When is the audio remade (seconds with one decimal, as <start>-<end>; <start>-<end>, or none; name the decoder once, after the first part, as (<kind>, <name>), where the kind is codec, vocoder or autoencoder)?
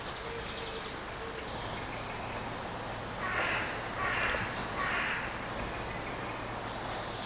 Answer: none